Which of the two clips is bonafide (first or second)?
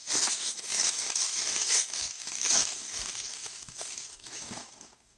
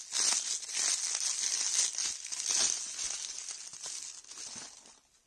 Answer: second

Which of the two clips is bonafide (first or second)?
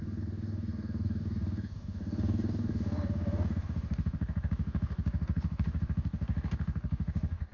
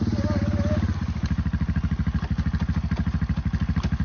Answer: second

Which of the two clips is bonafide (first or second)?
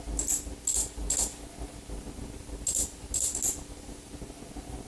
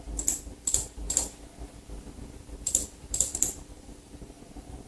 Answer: first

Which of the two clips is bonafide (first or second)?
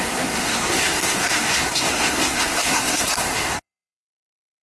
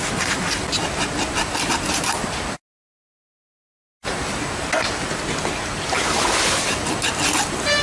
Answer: second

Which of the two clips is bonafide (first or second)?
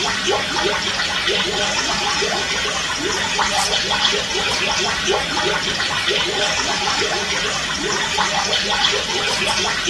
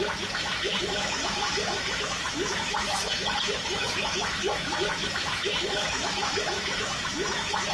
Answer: first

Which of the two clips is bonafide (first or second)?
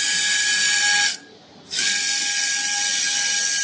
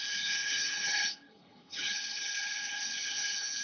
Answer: first